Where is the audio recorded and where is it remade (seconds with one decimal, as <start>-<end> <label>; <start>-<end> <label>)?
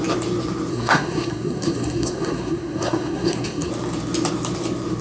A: 0.0-0.7 recorded; 0.7-3.7 remade; 3.7-5.0 recorded